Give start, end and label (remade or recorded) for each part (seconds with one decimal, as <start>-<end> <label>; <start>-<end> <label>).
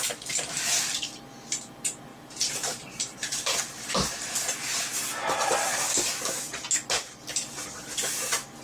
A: 0.0-2.1 recorded; 2.1-3.6 remade; 3.6-8.6 recorded